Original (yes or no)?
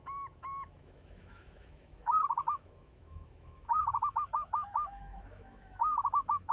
no